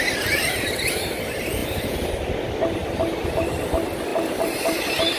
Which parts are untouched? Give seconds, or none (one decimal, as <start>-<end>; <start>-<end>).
0.0-4.1; 4.8-5.2